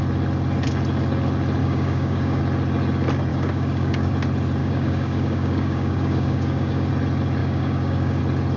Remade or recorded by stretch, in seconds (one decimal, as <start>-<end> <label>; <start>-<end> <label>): 0.0-1.6 recorded; 1.6-2.4 remade; 2.4-3.3 recorded; 3.3-4.1 remade; 4.1-4.6 recorded; 4.6-6.9 remade; 6.9-7.4 recorded; 7.4-8.2 remade; 8.2-8.6 recorded